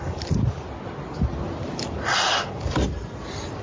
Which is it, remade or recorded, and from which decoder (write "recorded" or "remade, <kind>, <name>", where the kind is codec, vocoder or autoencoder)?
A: recorded